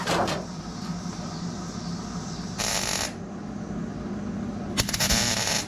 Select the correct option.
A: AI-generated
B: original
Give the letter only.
B